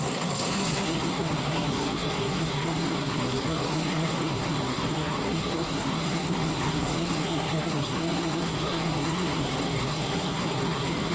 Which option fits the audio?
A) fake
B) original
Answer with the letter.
A